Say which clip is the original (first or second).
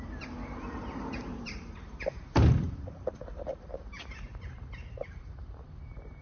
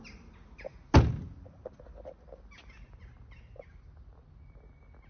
second